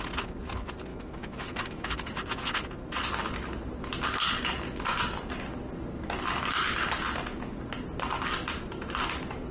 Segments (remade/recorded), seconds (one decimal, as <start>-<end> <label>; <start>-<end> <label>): 0.0-0.9 recorded; 0.9-2.1 remade; 2.1-9.5 recorded